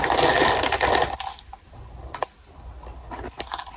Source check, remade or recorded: recorded